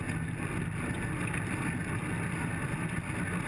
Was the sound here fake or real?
real